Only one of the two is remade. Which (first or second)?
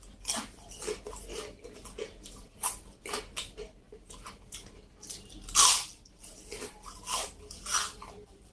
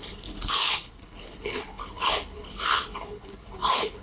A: second